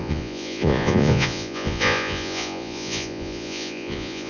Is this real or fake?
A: fake